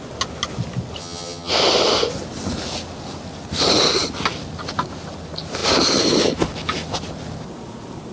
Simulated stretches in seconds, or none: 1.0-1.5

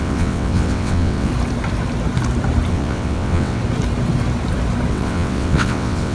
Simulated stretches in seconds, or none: 0.0-1.3; 2.7-3.6; 4.9-6.1

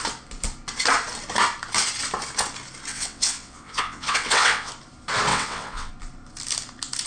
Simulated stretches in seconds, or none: 2.9-4.7; 5.3-5.9